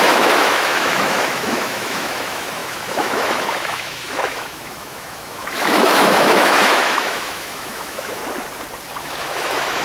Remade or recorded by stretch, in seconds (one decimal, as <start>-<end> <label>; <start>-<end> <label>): 0.0-8.2 remade; 8.2-9.0 recorded; 9.0-9.8 remade